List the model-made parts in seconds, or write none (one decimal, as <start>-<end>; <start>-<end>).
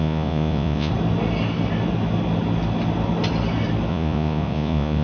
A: 0.0-0.9; 3.9-5.0